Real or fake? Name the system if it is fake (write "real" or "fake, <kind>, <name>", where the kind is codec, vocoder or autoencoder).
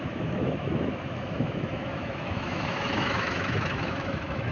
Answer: fake, autoencoder, DAC-VAE